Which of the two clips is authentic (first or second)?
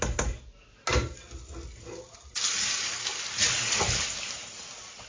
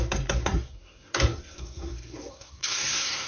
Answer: first